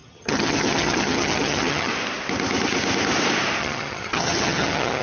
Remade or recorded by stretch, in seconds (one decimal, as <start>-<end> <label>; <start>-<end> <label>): 0.0-1.9 remade; 1.9-3.6 recorded; 3.6-5.0 remade